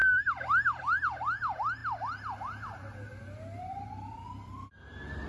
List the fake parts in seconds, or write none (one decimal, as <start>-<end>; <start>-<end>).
none